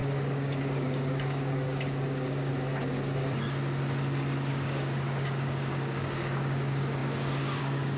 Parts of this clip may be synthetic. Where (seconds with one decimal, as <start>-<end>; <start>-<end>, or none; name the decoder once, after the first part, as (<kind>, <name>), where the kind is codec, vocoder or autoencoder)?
0.0-2.5 (codec, DAC); 4.5-8.0